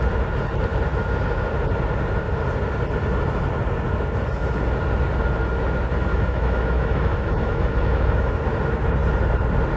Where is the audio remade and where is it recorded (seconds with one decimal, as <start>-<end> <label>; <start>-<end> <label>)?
0.0-6.1 recorded; 6.1-8.3 remade; 8.3-9.8 recorded

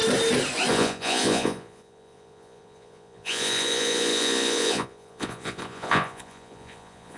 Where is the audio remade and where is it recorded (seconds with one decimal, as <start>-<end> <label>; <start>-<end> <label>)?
0.0-0.7 recorded; 0.7-7.2 remade